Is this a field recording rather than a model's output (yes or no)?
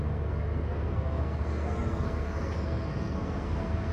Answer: no